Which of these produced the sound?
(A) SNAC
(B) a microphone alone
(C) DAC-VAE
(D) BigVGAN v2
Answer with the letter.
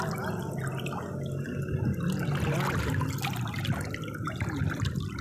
B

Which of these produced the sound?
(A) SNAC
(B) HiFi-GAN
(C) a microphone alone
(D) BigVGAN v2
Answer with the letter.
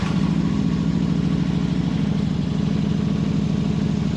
C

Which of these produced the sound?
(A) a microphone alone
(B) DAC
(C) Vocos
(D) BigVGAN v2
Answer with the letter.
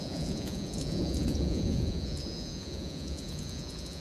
C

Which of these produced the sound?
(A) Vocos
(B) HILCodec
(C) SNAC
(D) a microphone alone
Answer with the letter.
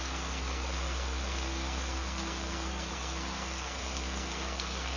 C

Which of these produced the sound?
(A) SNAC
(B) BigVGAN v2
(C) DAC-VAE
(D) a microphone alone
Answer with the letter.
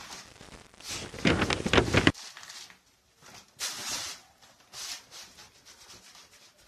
D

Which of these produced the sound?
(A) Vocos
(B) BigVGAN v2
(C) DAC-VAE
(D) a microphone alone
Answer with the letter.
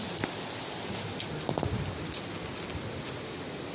D